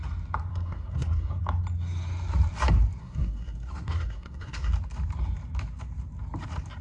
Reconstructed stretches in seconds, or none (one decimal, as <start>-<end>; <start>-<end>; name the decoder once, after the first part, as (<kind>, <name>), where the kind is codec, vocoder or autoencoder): 0.5-1.4 (codec, SNAC); 3.0-4.7